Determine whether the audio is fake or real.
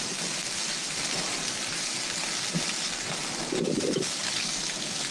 real